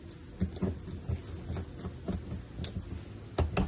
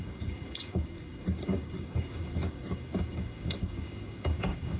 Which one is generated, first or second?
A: second